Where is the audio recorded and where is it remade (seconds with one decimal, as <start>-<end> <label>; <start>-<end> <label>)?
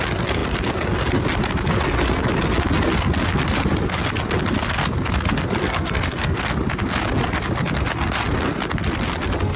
0.0-5.6 recorded; 5.6-6.4 remade; 6.4-9.6 recorded